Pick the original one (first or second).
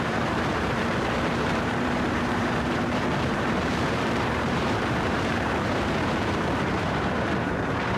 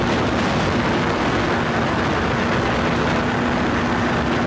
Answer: second